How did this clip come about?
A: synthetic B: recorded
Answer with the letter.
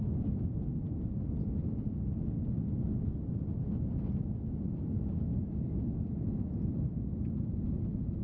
B